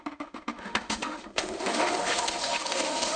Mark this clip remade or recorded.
remade